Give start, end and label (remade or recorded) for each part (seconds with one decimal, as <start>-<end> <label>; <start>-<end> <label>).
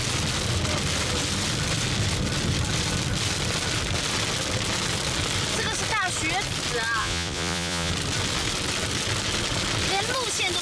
0.0-7.0 recorded; 7.0-7.9 remade; 7.9-10.6 recorded